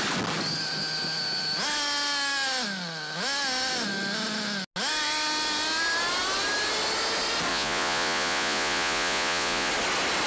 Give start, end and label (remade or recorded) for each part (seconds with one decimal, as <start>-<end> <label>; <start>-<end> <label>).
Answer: 0.0-7.5 recorded; 7.5-9.7 remade; 9.7-10.3 recorded